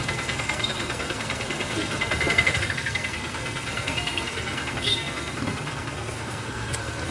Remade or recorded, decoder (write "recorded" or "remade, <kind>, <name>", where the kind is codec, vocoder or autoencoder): remade, codec, SNAC